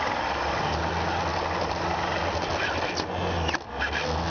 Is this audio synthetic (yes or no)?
no